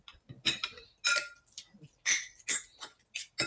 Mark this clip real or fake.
real